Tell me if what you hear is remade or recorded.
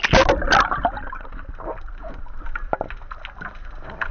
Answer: recorded